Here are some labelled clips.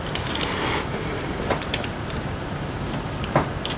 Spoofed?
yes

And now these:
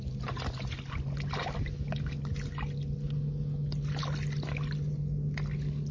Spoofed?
no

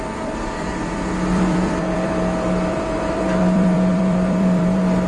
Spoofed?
yes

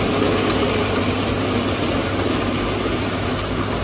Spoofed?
no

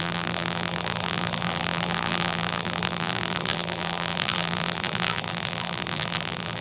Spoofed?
yes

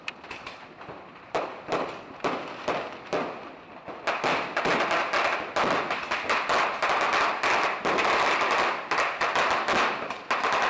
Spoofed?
no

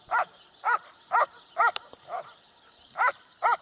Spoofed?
yes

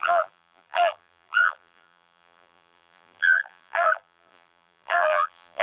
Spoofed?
yes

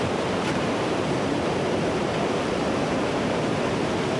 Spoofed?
yes